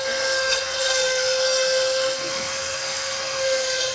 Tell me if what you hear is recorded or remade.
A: remade